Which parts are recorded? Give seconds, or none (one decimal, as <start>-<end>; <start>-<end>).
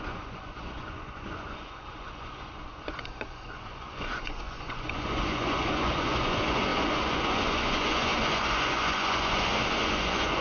none